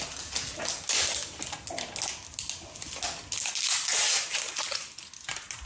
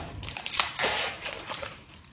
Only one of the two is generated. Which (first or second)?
second